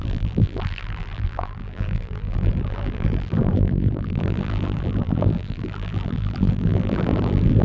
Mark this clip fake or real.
fake